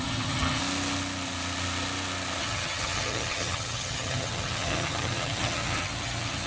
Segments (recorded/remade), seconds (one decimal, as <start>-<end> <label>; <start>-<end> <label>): 0.0-0.6 remade; 0.6-2.4 recorded; 2.4-6.5 remade